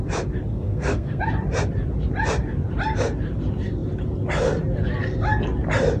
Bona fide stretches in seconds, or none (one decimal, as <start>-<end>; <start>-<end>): 0.0-0.5; 1.2-6.0